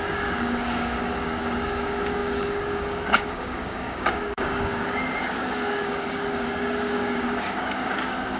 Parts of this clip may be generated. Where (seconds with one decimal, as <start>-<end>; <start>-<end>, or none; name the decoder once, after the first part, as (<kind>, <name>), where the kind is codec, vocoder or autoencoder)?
0.0-8.4 (codec, DAC)